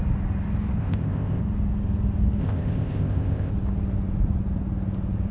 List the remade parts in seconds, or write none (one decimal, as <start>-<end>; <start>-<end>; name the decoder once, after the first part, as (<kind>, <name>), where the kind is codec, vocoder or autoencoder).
0.8-1.4 (codec, ZipCodec); 2.4-3.5